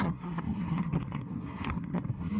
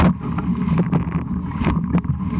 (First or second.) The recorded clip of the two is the second